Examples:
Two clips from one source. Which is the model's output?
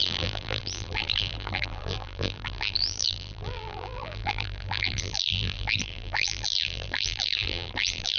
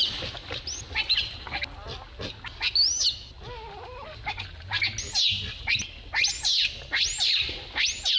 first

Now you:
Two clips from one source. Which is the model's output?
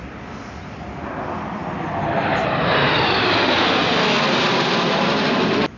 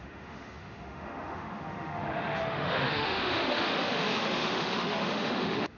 second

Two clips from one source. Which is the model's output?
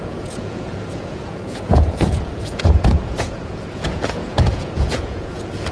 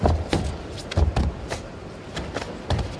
first